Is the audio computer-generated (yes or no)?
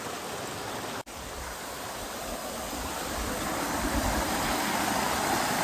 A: no